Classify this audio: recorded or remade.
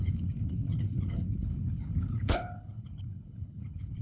remade